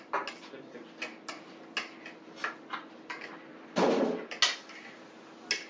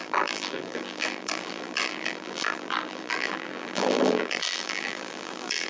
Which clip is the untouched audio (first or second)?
first